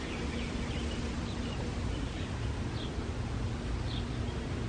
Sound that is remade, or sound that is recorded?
recorded